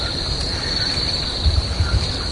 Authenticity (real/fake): fake